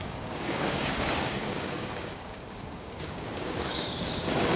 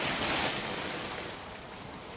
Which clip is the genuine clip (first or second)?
second